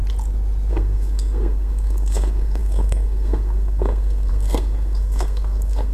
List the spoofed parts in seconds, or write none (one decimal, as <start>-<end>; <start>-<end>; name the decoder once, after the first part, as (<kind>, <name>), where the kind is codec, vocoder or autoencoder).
0.7-5.9 (codec, SNAC)